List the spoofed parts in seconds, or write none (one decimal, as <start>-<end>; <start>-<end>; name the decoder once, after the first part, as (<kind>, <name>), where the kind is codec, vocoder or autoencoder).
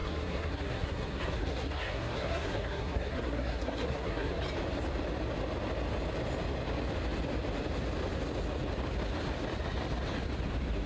0.0-4.4 (codec, SNAC)